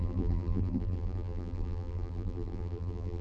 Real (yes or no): no